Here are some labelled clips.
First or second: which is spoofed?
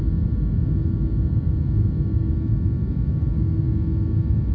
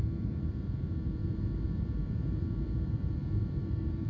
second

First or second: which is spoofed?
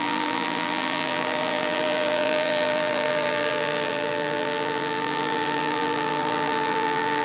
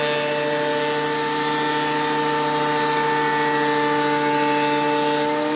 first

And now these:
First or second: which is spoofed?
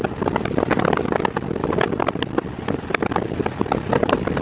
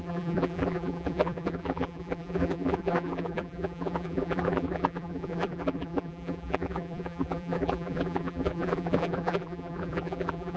second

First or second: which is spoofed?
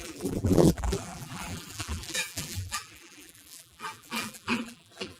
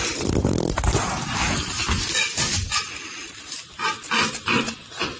first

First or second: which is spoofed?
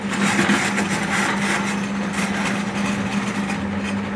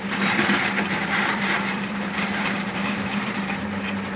second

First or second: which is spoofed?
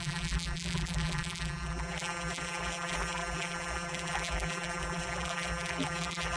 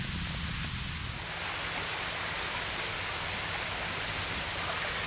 first